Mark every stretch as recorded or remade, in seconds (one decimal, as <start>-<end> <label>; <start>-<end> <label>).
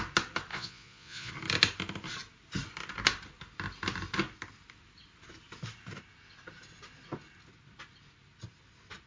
0.0-0.5 recorded; 0.5-1.3 remade; 1.3-9.1 recorded